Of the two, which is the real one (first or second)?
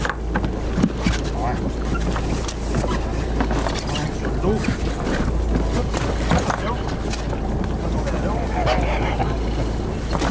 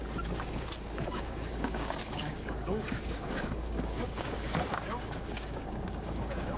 first